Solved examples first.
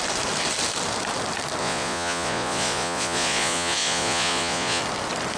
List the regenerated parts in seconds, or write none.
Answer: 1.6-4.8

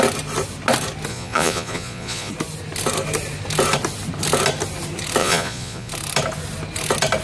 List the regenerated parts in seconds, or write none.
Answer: 1.1-2.3; 5.2-5.9

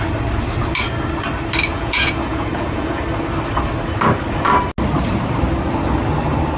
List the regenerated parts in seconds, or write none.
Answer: 1.7-3.0

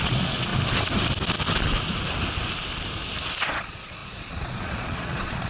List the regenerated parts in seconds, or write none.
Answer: 0.0-0.5; 3.4-5.5

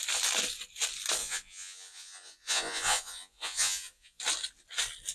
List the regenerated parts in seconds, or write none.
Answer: 1.2-4.2

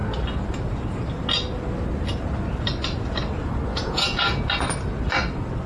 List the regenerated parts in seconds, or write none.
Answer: 3.8-4.4

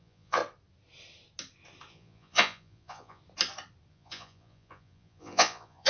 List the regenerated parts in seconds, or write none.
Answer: 0.0-0.4; 1.9-3.2; 3.9-5.9